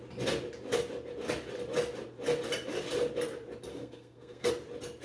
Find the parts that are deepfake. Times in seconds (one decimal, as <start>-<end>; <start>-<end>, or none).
3.7-4.5